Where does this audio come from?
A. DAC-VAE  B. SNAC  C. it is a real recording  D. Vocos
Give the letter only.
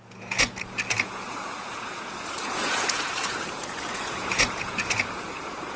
D